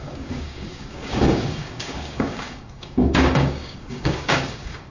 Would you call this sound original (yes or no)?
no